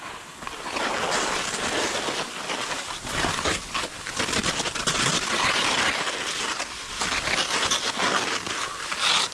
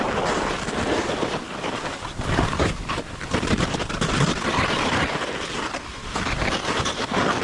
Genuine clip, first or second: first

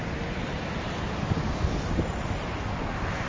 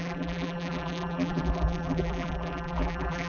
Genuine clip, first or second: first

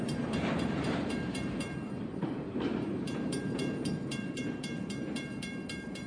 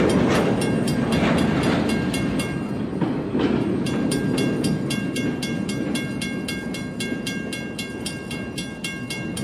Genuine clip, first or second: second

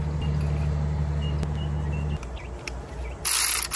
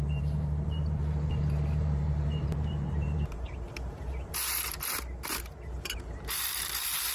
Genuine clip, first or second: first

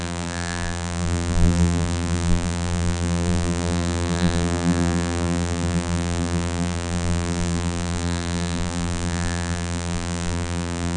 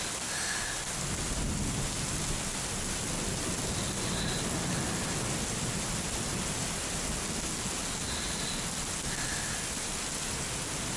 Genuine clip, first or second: second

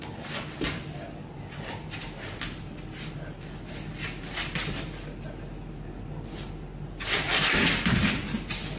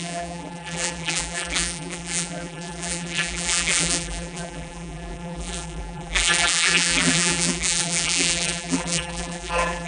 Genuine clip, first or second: first